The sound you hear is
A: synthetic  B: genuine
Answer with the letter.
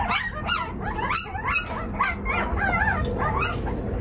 B